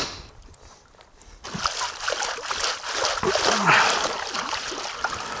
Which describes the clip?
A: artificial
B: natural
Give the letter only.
B